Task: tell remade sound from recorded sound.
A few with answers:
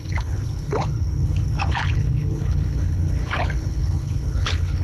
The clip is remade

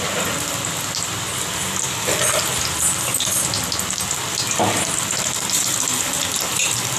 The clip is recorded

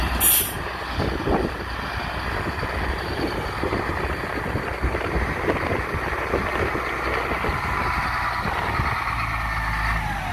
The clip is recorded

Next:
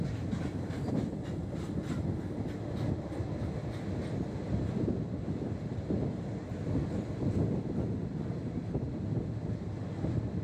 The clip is recorded